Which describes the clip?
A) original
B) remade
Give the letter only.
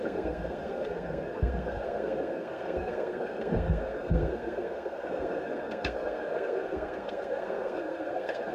B